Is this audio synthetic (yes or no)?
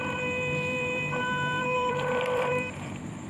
yes